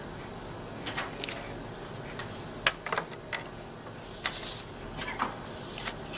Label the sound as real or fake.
real